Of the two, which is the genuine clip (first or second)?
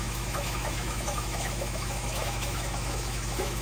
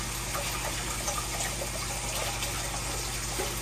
second